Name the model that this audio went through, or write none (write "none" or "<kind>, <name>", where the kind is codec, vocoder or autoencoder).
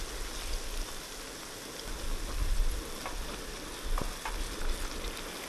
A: none